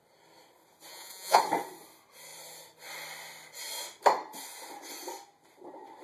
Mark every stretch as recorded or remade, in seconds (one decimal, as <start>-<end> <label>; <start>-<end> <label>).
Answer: 0.0-0.9 recorded; 0.9-1.4 remade; 1.4-6.0 recorded